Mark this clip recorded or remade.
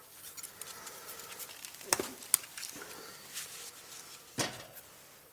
recorded